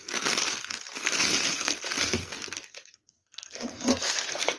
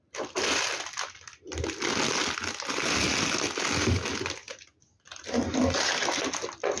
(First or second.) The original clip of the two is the second